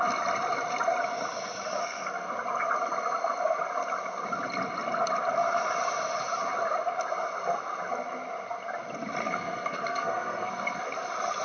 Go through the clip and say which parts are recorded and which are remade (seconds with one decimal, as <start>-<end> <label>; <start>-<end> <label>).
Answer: 0.0-1.8 recorded; 1.8-2.3 remade; 2.3-9.2 recorded; 9.2-10.9 remade; 10.9-11.4 recorded